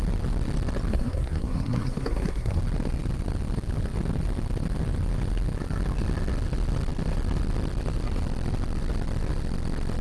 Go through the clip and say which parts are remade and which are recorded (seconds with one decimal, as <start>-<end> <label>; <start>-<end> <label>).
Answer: 0.0-0.9 recorded; 0.9-2.6 remade; 2.6-10.0 recorded

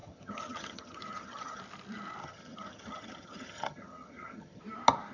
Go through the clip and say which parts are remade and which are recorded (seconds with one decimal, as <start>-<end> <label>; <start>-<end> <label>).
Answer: 0.0-1.6 remade; 1.6-2.2 recorded; 2.2-4.6 remade; 4.6-5.1 recorded

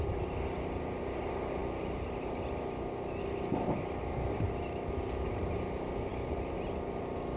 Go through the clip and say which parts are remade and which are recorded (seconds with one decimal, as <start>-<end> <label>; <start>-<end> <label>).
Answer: 0.0-7.4 recorded

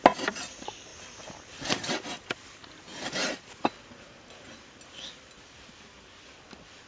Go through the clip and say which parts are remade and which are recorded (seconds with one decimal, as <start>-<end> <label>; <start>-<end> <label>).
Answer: 0.0-6.9 recorded

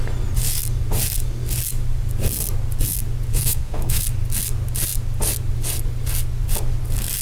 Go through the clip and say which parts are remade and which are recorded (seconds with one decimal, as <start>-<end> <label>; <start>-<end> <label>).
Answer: 0.0-3.3 recorded; 3.3-4.0 remade; 4.0-7.2 recorded

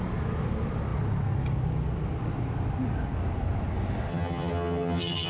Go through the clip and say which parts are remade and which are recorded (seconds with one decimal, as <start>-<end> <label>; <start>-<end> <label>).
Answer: 0.0-4.1 recorded; 4.1-5.3 remade

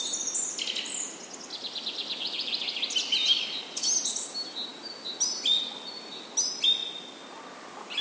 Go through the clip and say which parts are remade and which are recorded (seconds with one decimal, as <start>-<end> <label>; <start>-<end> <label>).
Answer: 0.0-2.2 recorded; 2.2-2.8 remade; 2.8-8.0 recorded

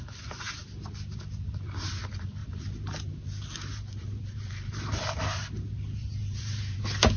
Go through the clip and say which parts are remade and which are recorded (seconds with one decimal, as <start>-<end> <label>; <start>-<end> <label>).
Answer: 0.0-2.4 recorded; 2.4-5.0 remade; 5.0-6.0 recorded; 6.0-6.8 remade; 6.8-7.2 recorded